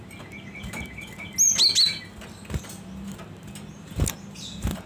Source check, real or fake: real